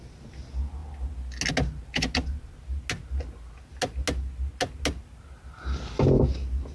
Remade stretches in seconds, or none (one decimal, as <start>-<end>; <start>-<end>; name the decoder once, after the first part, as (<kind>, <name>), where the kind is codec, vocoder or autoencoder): none